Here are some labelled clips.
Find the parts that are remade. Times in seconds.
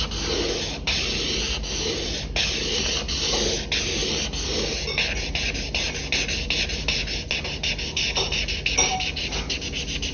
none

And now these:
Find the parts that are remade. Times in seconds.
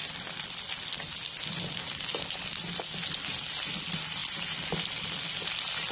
none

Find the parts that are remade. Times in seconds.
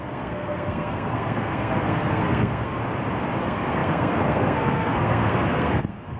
0.0-2.8 (codec, SNAC); 3.4-6.2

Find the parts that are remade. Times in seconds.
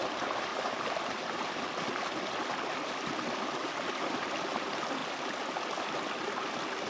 0.5-1.6 (vocoder, BigVGAN v2)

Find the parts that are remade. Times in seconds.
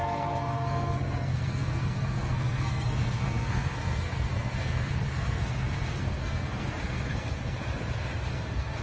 0.0-7.6 (codec, SNAC); 8.3-8.8